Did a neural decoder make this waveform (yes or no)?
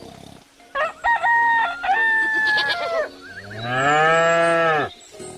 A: no